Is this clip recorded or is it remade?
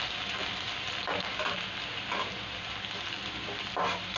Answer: recorded